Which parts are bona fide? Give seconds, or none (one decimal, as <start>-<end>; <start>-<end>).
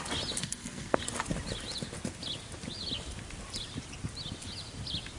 0.0-0.4; 1.0-5.2